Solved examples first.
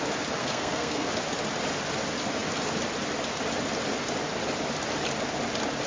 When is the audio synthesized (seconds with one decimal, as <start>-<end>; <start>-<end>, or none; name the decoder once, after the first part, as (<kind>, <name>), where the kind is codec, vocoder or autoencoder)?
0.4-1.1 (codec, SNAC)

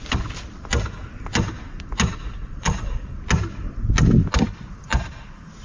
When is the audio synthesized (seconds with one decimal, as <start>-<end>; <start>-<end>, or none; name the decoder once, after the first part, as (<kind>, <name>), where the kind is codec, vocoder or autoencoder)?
2.4-3.2 (vocoder, Vocos)

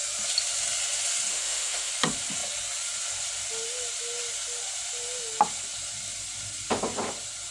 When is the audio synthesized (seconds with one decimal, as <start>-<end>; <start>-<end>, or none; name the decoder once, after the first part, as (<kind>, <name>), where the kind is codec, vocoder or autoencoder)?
1.3-1.9 (autoencoder, DAC-VAE)

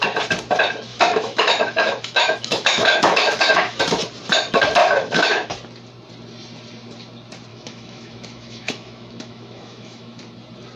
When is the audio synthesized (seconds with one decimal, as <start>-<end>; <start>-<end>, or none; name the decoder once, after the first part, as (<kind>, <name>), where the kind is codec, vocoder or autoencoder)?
0.9-3.8 (autoencoder, DAC-VAE); 4.8-5.5; 7.5-10.2

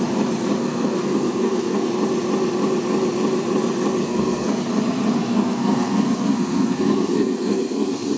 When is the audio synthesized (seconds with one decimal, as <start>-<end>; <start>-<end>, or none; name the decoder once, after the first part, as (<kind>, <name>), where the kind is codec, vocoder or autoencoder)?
0.6-1.9 (codec, SNAC); 4.0-4.6; 5.2-8.2

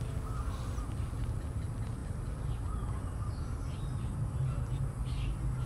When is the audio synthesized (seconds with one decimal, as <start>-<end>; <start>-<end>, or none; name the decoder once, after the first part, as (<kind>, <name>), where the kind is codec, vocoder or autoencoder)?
none